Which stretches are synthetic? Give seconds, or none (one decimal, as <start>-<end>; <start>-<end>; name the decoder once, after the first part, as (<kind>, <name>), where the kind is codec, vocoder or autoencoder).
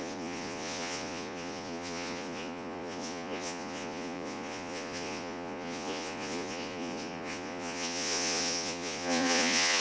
0.0-9.8 (vocoder, Vocos)